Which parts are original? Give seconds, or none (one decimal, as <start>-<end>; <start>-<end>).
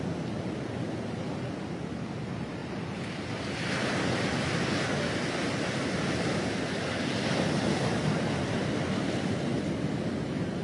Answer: 0.0-10.6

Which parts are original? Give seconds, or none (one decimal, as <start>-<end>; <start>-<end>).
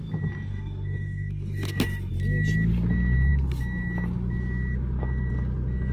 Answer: 0.0-0.5; 2.1-5.9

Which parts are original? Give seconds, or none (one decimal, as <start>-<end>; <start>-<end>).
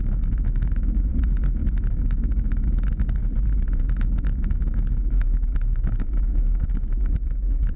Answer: 1.1-1.9; 3.2-4.0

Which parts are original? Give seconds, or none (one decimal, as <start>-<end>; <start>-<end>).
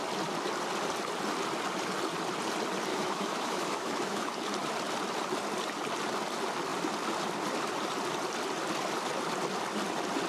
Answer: 0.0-2.9; 4.3-10.3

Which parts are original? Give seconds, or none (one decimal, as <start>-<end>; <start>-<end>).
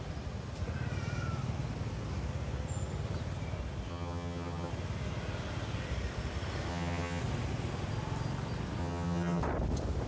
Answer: 0.0-3.9; 4.7-6.7; 7.2-8.8; 9.4-10.1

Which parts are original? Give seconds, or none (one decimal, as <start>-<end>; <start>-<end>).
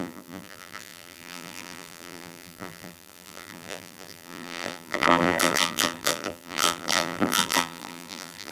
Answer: none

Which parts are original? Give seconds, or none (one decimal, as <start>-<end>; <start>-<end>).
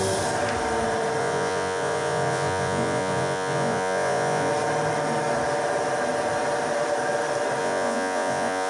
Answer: 0.0-1.2; 4.5-7.6